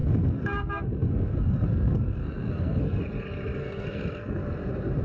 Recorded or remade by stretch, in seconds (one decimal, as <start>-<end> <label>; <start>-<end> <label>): 0.0-3.0 remade; 3.0-3.6 recorded; 3.6-4.4 remade; 4.4-5.0 recorded